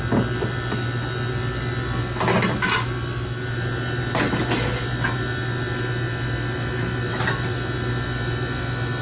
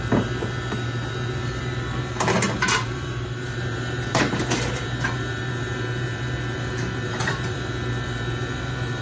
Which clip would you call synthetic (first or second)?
second